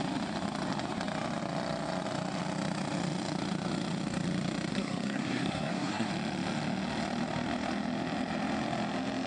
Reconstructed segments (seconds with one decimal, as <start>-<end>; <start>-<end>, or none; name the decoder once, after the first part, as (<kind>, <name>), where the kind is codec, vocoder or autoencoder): 4.7-6.1 (codec, SNAC)